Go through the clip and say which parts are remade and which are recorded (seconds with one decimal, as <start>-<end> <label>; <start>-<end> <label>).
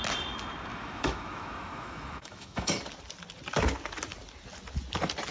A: 0.0-0.7 recorded; 0.7-2.8 remade; 2.8-5.3 recorded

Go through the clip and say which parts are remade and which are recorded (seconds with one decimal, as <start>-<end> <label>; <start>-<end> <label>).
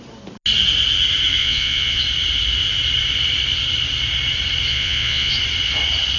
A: 0.0-1.4 recorded; 1.4-2.0 remade; 2.0-4.7 recorded; 4.7-5.3 remade; 5.3-6.2 recorded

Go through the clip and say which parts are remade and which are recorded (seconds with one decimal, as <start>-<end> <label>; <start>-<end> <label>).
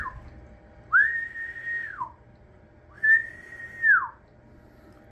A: 0.0-5.1 recorded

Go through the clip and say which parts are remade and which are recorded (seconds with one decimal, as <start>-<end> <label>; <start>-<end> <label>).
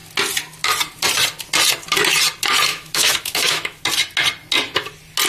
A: 0.0-2.7 recorded; 2.7-3.8 remade; 3.8-5.3 recorded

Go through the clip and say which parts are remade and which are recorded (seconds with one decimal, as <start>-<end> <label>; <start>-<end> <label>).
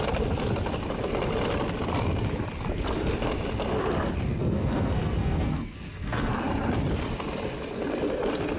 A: 0.0-4.4 recorded; 4.4-6.3 remade; 6.3-8.6 recorded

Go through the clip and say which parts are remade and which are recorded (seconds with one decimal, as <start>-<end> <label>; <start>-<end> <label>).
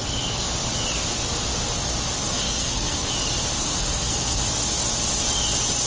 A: 0.0-2.2 recorded; 2.2-3.1 remade; 3.1-3.6 recorded; 3.6-4.4 remade; 4.4-5.9 recorded